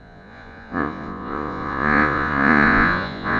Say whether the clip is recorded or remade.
remade